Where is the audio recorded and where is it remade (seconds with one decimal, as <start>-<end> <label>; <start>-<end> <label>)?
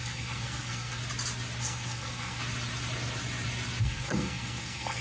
0.0-1.0 remade; 1.0-1.6 recorded; 1.6-2.4 remade; 2.4-3.8 recorded; 3.8-5.0 remade